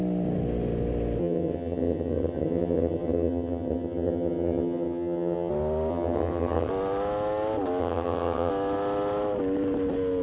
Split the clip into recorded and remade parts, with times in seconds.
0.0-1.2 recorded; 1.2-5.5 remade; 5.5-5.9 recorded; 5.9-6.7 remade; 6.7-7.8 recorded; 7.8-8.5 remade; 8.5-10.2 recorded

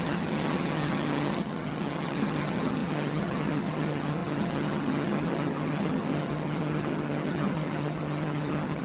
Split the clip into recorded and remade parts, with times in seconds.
0.0-8.8 remade